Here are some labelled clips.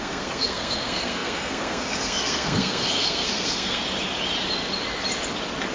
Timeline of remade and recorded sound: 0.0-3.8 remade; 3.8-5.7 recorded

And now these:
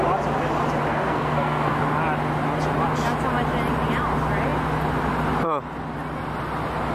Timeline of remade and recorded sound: 0.0-0.9 recorded; 0.9-1.8 remade; 1.8-6.9 recorded

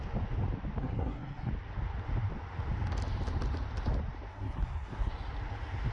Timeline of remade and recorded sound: 0.0-0.8 recorded; 0.8-1.5 remade; 1.5-4.3 recorded; 4.3-5.1 remade; 5.1-5.9 recorded

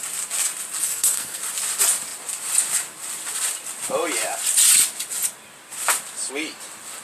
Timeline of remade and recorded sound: 0.0-0.8 recorded; 0.8-1.4 remade; 1.4-7.0 recorded

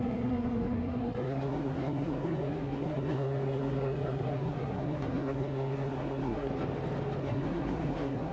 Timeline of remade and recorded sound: 0.0-6.5 remade; 6.5-7.2 recorded; 7.2-8.3 remade